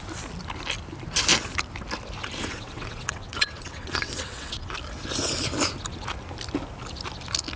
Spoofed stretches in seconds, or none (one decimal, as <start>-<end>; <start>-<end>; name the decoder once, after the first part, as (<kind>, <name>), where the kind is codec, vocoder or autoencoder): 2.5-4.7 (vocoder, WaveNeXt)